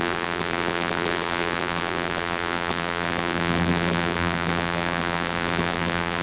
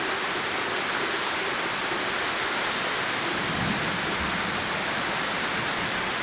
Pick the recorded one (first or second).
second